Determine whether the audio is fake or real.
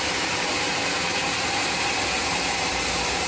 fake